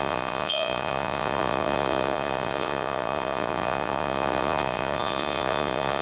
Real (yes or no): no